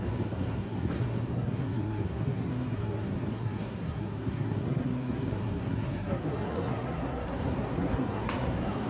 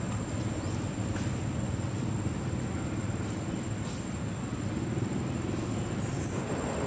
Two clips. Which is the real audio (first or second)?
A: second